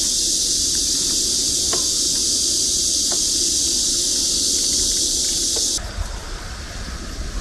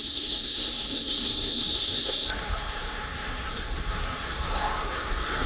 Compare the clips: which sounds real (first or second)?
first